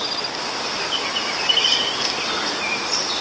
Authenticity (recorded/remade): recorded